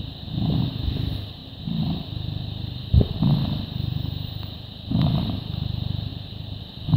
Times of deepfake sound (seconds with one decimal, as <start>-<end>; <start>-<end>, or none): 1.4-5.3; 6.1-6.6